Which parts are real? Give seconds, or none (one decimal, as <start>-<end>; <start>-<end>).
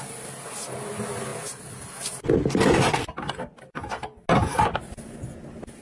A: 0.0-5.8